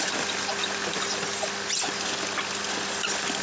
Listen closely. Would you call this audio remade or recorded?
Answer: recorded